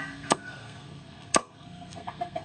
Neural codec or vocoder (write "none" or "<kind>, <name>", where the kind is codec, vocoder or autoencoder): codec, SNAC